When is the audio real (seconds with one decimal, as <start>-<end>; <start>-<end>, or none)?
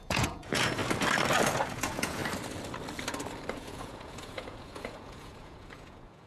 0.8-1.7; 2.2-3.5